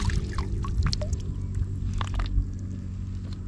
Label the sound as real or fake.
real